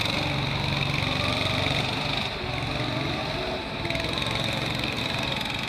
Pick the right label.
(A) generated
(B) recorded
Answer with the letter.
B